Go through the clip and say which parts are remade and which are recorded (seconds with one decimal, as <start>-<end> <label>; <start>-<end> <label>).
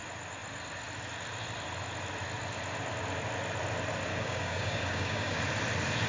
0.0-4.1 recorded; 4.1-5.4 remade; 5.4-6.1 recorded